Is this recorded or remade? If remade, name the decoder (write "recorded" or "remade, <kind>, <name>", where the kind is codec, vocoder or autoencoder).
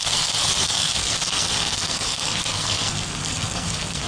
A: remade, codec, SNAC